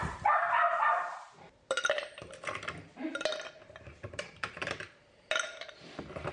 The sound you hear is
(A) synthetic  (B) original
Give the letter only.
B